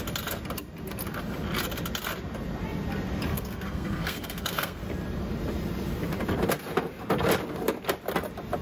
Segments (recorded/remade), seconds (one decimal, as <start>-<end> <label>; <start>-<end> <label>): 0.0-3.3 recorded; 3.3-4.8 remade; 4.8-8.6 recorded